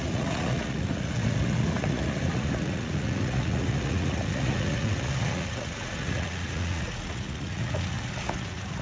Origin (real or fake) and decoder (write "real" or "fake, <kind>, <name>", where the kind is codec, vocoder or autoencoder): fake, vocoder, Vocos